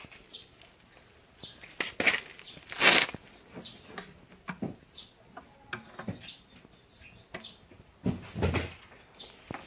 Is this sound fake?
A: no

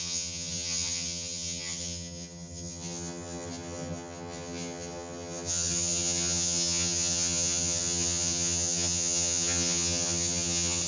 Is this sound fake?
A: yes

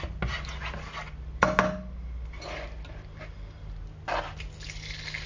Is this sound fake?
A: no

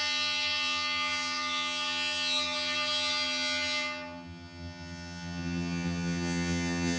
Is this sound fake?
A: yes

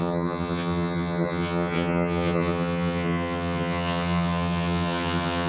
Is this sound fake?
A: yes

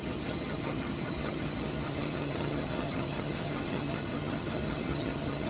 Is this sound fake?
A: yes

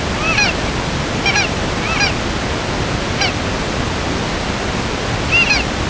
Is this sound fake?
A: no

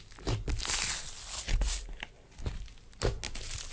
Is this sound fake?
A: no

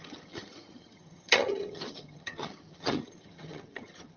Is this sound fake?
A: yes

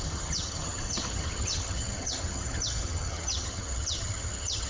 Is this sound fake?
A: yes